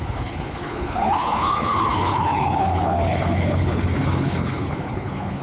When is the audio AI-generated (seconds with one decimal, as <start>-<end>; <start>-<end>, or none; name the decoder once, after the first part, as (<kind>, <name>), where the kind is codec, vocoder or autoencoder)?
0.0-5.4 (codec, HILCodec)